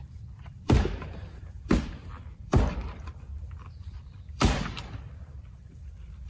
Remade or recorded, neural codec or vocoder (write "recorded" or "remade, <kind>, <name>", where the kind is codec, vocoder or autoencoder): remade, vocoder, BigVGAN v2